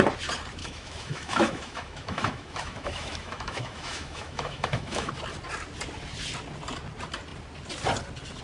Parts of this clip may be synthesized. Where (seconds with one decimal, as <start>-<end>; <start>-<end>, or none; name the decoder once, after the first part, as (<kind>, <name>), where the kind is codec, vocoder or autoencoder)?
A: 0.6-5.1 (autoencoder, DAC-VAE)